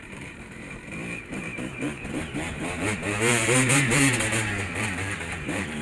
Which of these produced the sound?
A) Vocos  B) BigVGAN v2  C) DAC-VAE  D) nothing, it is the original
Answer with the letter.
B